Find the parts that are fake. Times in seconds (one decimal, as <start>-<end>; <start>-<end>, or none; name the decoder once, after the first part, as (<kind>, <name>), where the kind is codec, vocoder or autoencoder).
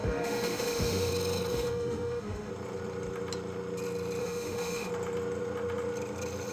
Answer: 0.0-1.1 (autoencoder, DAC-VAE); 1.5-2.5; 4.2-4.9